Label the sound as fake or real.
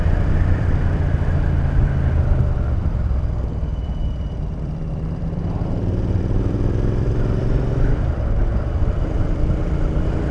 fake